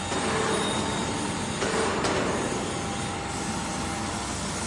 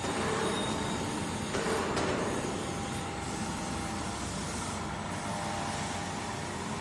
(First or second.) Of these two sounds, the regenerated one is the second